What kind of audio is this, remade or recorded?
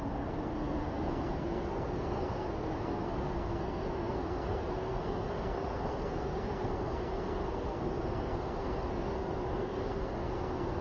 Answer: remade